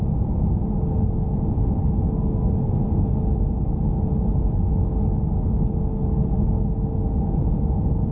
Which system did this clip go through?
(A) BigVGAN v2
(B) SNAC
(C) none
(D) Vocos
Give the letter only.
C